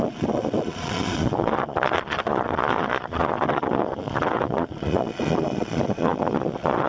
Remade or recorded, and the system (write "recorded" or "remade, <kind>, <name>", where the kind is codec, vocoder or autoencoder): remade, vocoder, Vocos